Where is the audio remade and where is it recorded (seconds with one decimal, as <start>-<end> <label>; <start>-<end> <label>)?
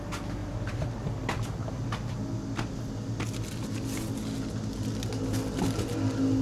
0.0-0.4 recorded; 0.4-2.2 remade; 2.2-6.4 recorded